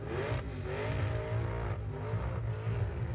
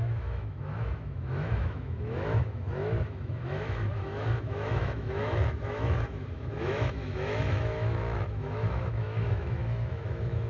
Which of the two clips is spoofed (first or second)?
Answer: second